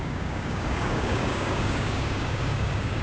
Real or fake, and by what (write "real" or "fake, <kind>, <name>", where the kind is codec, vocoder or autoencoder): fake, codec, DAC